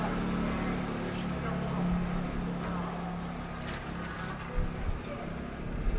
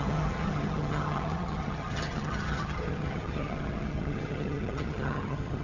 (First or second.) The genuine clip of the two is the first